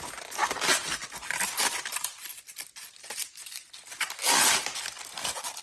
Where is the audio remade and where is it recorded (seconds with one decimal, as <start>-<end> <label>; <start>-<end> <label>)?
0.0-0.4 recorded; 0.4-1.6 remade; 1.6-5.6 recorded